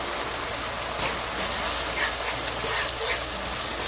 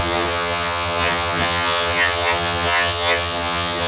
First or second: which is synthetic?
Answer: second